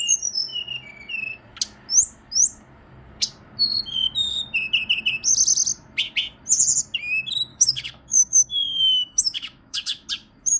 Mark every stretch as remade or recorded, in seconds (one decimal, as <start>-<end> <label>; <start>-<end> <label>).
0.0-7.5 recorded; 7.5-10.1 remade; 10.1-10.6 recorded